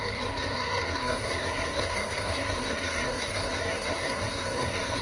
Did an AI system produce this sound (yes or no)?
yes